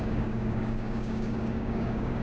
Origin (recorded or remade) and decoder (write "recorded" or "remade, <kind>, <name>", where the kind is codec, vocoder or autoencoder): remade, codec, DAC